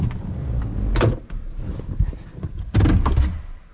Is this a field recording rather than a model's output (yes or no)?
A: yes